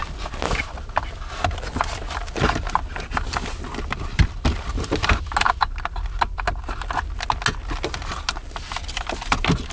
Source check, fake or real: real